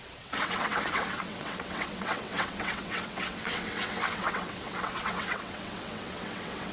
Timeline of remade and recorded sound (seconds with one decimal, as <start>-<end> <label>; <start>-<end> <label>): 0.0-6.7 remade